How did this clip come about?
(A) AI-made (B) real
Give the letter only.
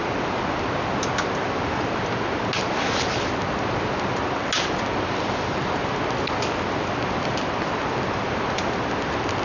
B